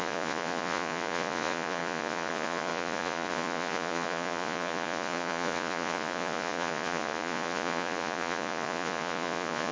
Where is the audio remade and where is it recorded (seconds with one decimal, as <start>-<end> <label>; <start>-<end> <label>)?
0.0-9.7 remade